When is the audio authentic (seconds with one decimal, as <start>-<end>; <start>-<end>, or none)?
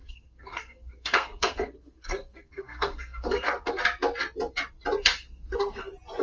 3.7-5.0; 5.8-6.2